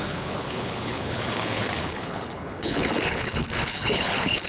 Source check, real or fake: fake